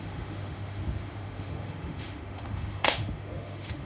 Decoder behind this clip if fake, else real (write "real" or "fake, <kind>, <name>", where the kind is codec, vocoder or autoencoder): fake, autoencoder, DAC-VAE